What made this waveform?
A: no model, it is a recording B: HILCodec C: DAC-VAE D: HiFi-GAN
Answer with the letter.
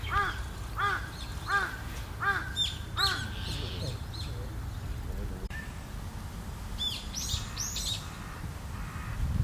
A